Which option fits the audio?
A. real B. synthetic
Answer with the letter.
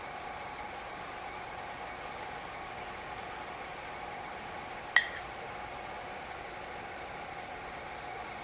A